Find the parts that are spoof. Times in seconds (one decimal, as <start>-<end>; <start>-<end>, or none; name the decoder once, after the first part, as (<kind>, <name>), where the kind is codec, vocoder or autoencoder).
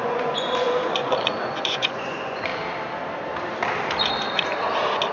0.0-2.5 (vocoder, Vocos)